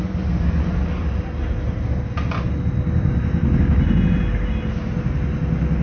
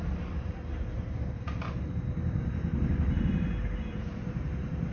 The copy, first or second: second